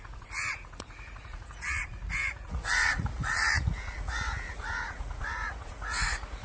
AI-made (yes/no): yes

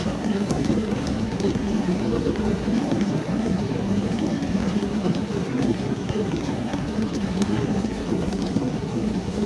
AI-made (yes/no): yes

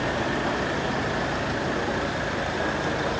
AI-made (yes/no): no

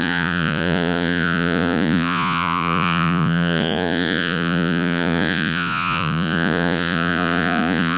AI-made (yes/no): yes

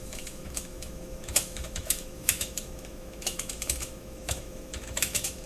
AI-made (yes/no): yes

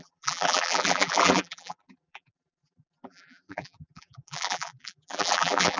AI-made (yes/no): yes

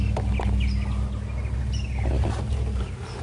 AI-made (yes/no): no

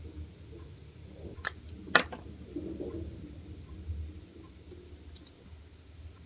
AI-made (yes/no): no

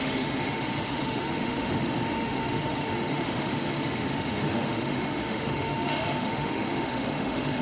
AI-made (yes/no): yes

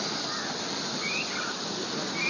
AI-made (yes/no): no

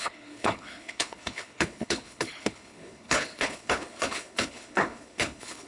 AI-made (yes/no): yes